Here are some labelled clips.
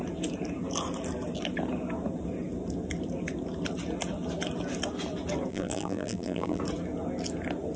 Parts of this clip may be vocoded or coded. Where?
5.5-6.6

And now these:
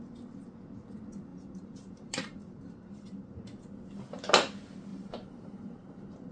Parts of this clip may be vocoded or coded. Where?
1.3-3.6; 4.9-6.3